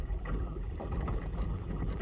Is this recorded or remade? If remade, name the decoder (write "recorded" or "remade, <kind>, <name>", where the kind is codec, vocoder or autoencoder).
remade, vocoder, BigVGAN v2